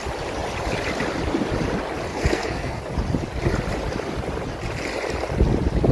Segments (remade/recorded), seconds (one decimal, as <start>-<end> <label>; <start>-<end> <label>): 0.0-2.1 recorded; 2.1-2.8 remade; 2.8-5.9 recorded